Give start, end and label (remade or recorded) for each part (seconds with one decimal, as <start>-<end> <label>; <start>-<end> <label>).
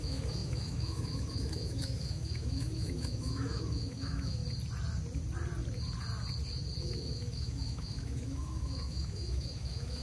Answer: 0.0-4.4 remade; 4.4-6.8 recorded; 6.8-10.0 remade